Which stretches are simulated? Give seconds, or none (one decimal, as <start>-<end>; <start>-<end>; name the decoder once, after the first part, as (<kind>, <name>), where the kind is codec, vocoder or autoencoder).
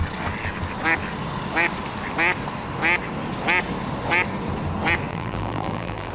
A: 5.1-6.1 (vocoder, BigVGAN v2)